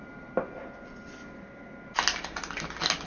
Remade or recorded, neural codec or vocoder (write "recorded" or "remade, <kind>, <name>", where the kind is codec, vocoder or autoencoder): recorded